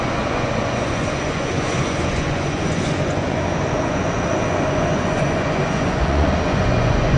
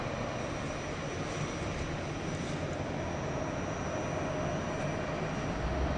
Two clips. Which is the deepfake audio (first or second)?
first